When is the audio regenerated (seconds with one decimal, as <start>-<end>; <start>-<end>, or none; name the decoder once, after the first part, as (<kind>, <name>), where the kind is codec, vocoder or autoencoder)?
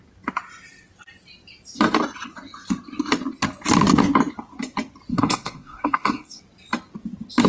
5.1-6.4 (codec, SNAC)